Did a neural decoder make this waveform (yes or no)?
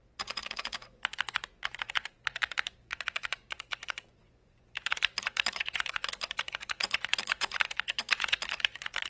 yes